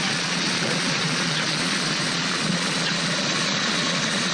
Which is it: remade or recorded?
remade